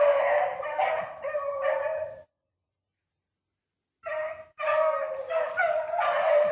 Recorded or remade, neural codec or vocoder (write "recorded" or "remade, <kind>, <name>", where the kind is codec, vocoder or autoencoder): recorded